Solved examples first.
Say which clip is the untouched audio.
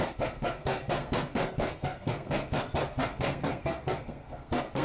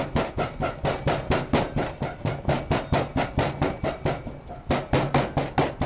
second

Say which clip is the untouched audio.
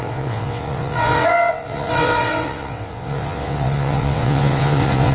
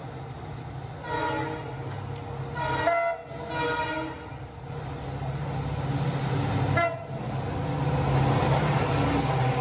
second